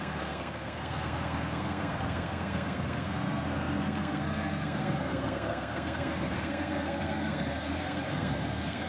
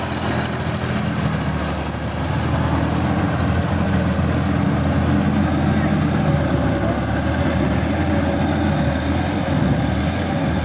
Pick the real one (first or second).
second